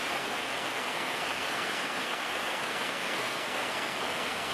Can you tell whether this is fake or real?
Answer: fake